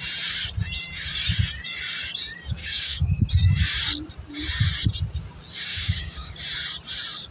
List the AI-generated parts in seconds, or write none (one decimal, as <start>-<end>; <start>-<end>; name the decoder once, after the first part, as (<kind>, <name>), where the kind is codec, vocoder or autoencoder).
2.6-3.3 (codec, DAC); 5.7-6.3